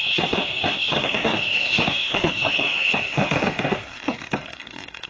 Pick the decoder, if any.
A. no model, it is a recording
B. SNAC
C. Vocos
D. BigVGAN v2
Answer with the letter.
B